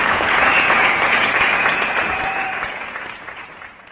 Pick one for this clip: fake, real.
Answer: fake